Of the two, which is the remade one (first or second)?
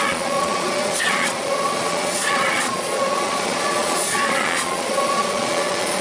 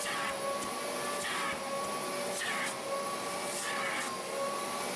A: first